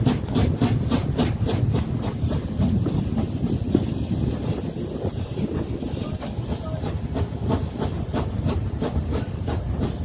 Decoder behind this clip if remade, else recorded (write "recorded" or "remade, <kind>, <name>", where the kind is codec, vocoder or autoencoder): recorded